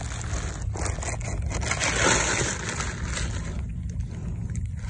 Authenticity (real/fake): real